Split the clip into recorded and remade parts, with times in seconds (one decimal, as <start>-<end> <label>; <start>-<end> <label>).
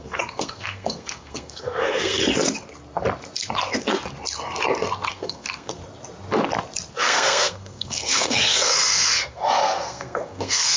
0.0-2.2 remade; 2.2-5.1 recorded; 5.1-5.8 remade; 5.8-6.9 recorded; 6.9-10.8 remade